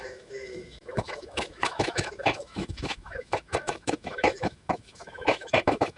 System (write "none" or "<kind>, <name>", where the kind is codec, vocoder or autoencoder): autoencoder, DAC-VAE